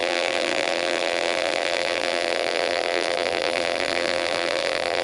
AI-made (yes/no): yes